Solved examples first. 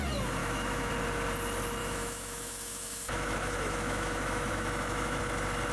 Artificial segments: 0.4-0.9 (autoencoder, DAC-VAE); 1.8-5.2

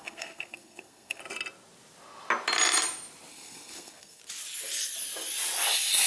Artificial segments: 0.0-1.2 (codec, SNAC); 3.3-4.2

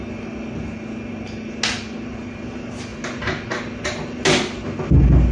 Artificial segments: none

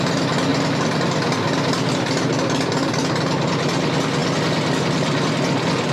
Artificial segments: none

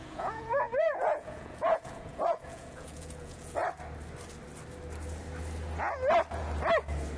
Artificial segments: 0.0-3.6 (vocoder, Vocos)

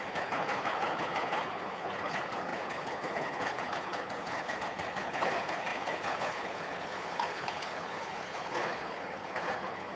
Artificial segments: 0.0-10.0 (codec, HILCodec)

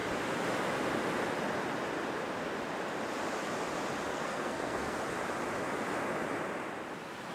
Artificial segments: 4.1-5.0 (codec, SNAC)

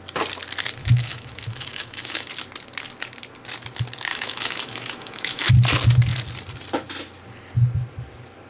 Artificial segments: 0.8-2.3 (autoencoder, DAC-VAE); 4.1-5.5